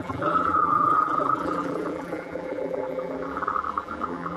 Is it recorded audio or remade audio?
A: remade